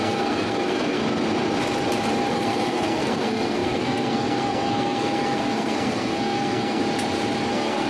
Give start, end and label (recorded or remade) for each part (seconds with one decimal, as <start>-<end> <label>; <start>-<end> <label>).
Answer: 0.0-1.0 remade; 1.0-2.3 recorded; 2.3-6.8 remade; 6.8-7.5 recorded; 7.5-7.9 remade